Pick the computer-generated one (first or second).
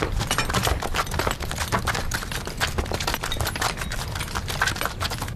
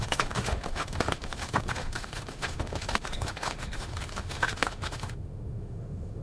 second